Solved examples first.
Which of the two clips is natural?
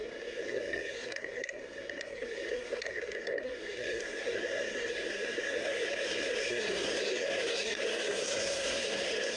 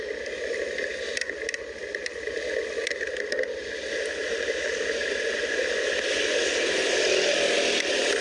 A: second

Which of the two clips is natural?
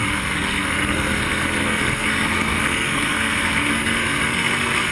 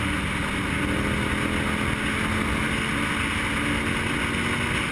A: second